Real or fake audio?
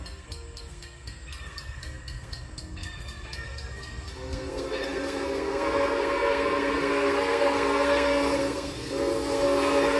fake